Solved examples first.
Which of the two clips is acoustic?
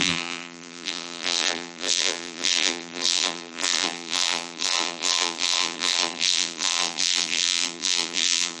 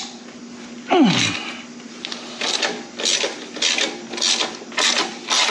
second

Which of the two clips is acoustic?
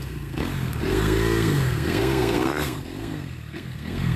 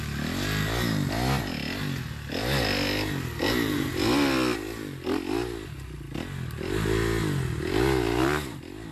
second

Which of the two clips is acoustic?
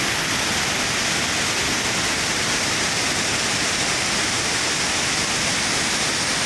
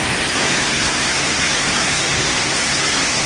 first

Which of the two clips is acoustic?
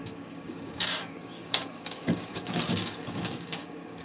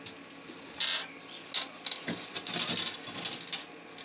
second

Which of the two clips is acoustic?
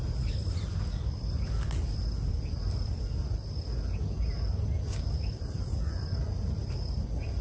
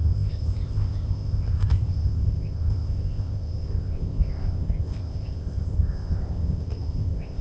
first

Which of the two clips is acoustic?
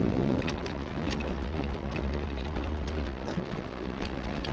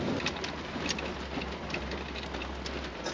second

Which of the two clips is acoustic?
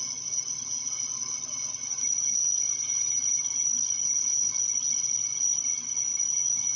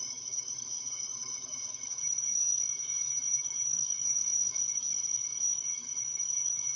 first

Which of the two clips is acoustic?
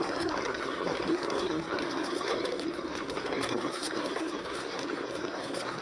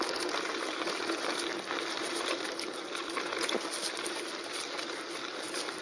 second